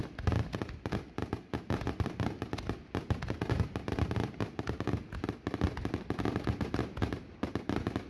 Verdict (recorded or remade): recorded